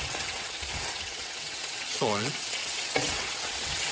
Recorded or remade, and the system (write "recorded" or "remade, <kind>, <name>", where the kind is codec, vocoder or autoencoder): remade, vocoder, WaveNeXt